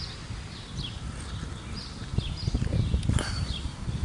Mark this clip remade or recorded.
recorded